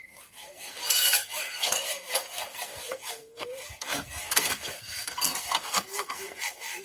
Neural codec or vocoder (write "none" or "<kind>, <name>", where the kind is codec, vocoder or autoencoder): codec, SNAC